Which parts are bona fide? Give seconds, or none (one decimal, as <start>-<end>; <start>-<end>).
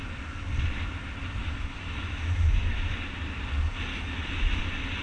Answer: 0.0-1.4; 2.9-3.9; 4.6-5.0